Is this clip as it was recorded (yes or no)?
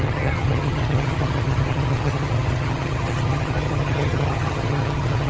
no